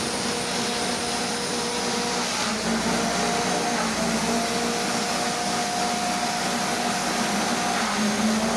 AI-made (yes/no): no